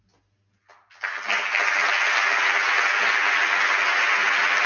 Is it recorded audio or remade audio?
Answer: recorded